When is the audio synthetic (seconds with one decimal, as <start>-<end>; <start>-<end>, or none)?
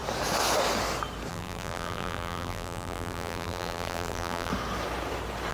1.3-4.5